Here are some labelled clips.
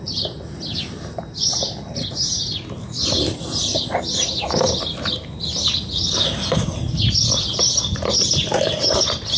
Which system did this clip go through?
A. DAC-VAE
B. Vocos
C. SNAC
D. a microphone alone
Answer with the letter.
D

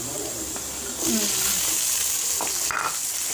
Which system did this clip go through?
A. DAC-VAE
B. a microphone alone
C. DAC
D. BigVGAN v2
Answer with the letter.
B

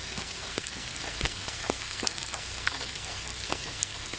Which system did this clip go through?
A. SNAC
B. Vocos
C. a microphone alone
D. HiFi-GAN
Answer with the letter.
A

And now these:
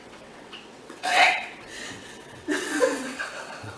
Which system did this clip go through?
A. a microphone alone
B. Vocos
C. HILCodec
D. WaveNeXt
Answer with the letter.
D